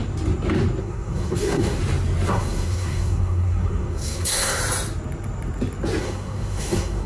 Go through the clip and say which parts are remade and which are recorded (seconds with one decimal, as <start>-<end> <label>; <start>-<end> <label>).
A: 0.0-0.8 recorded; 0.8-1.8 remade; 1.8-2.3 recorded; 2.3-4.6 remade; 4.6-6.0 recorded; 6.0-7.1 remade